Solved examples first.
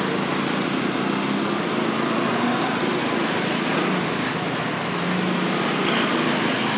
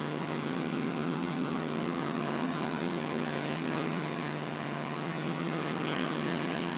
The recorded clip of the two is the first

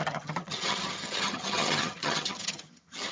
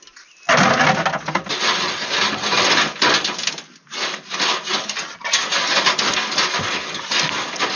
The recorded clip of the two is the second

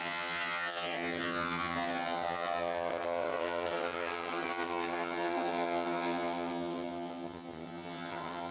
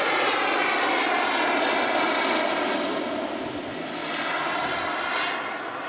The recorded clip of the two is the second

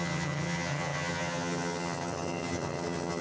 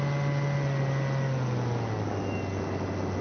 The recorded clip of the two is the second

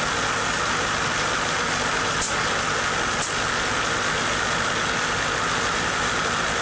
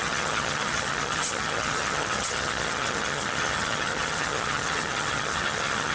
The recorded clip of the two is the first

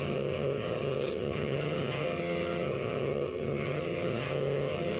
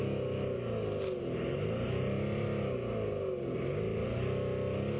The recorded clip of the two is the second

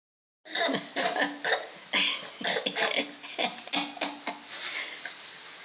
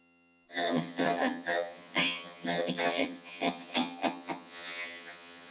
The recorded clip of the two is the first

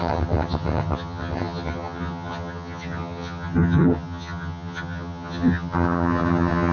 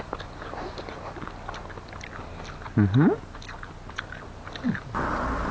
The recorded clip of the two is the second